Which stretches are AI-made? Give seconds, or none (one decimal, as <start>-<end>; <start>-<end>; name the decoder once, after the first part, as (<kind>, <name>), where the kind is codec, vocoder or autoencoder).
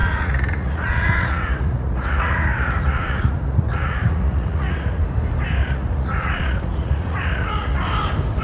0.0-5.0 (vocoder, Vocos); 5.6-7.8